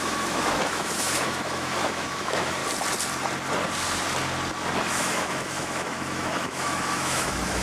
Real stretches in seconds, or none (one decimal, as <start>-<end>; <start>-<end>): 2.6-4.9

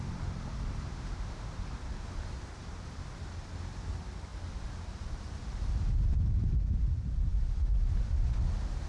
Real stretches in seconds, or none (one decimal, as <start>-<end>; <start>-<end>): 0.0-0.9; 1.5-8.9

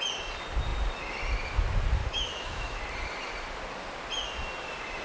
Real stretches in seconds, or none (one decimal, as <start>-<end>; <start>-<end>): 0.0-2.0; 2.8-5.0

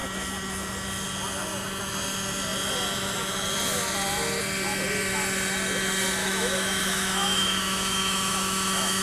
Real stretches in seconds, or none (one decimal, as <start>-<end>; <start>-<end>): 0.0-6.2

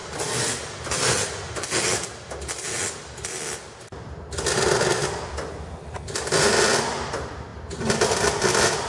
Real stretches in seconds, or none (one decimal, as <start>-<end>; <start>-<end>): 0.0-8.9